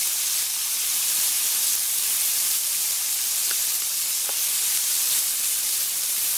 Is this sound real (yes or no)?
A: no